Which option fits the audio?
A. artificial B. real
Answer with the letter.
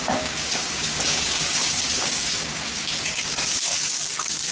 A